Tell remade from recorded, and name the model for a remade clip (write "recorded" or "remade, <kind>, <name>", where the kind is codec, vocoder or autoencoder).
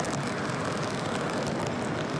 recorded